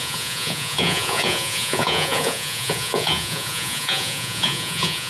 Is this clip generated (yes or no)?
yes